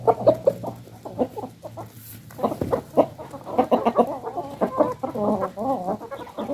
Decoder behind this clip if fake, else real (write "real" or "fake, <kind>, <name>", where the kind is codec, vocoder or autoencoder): real